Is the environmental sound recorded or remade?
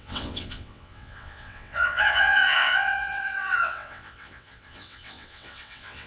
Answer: remade